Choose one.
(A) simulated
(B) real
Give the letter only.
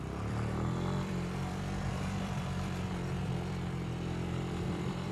A